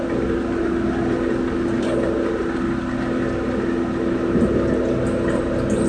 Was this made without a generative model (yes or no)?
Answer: yes